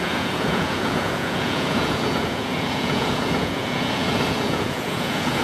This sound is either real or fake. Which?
fake